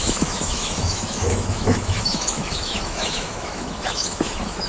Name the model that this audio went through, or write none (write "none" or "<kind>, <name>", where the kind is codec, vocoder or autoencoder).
autoencoder, DAC-VAE